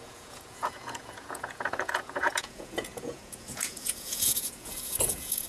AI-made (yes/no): yes